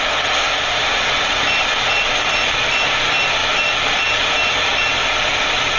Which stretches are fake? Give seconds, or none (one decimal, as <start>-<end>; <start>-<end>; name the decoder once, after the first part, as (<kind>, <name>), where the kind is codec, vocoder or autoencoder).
none